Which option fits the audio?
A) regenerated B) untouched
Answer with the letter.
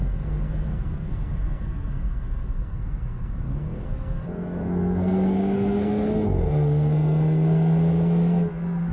A